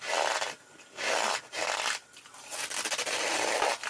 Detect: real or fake real